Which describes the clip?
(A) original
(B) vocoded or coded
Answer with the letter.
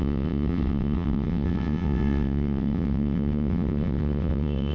B